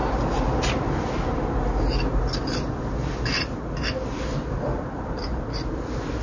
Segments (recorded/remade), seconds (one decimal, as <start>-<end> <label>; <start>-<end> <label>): 0.0-6.2 recorded